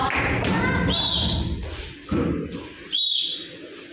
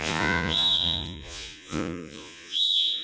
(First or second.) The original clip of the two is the first